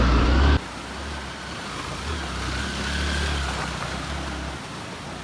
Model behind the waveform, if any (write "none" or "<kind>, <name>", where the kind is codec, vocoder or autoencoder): none